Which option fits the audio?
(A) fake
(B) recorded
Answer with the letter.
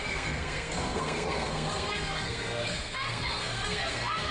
A